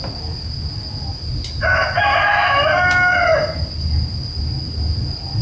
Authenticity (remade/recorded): recorded